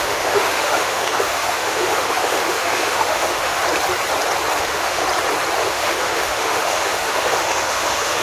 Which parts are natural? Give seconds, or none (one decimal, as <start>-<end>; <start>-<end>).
3.6-4.6; 5.0-5.7